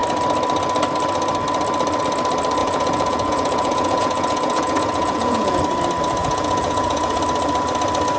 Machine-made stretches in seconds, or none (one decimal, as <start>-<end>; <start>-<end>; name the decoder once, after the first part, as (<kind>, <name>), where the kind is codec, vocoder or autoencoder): 2.6-5.6 (vocoder, Vocos); 6.2-7.2